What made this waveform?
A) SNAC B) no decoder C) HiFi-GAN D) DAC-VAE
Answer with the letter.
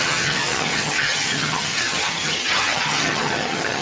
C